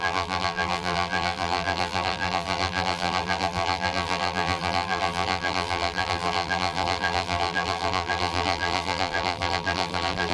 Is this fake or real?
fake